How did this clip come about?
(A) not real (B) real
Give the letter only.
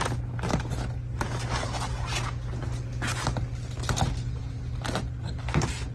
B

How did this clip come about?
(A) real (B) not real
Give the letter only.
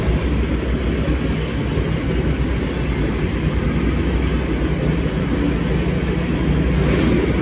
A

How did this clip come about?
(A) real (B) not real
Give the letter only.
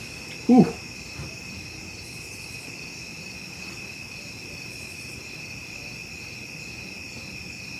A